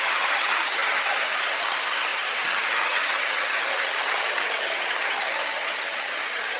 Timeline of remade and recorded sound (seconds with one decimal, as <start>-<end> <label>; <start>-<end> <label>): 0.0-6.6 remade